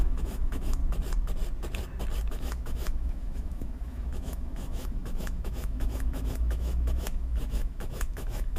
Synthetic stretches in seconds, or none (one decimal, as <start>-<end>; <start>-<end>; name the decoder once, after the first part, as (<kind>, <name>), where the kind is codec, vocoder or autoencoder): 0.0-0.8 (autoencoder, DAC-VAE); 2.3-8.6